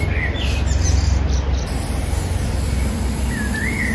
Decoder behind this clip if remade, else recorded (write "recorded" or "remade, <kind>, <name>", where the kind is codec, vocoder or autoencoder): recorded